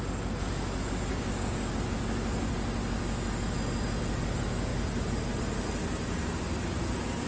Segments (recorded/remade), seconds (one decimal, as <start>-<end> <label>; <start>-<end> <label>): 0.0-1.1 recorded; 1.1-1.7 remade; 1.7-7.3 recorded